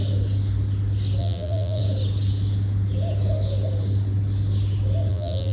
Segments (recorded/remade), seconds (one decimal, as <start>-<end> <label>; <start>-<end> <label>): 0.0-1.2 recorded; 1.2-1.8 remade; 1.8-5.1 recorded; 5.1-5.5 remade